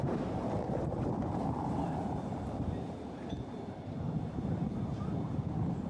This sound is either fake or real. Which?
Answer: fake